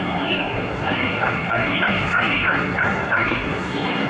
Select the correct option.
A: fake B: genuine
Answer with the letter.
A